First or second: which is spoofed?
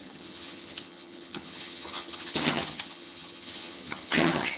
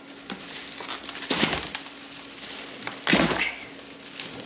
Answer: first